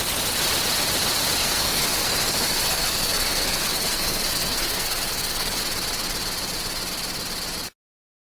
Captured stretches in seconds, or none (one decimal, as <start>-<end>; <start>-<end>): 0.0-1.4; 5.6-8.2